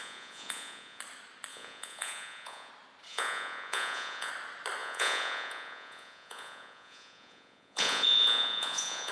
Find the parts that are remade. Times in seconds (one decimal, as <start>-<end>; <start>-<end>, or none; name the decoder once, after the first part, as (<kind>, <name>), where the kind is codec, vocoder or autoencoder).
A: 0.0-1.0 (vocoder, Vocos); 1.5-2.7; 3.1-4.3; 4.8-9.1